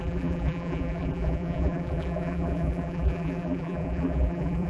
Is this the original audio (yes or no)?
no